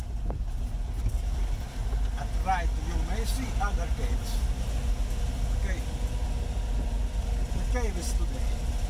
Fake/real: real